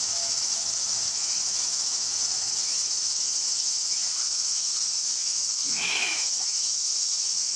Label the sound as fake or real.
fake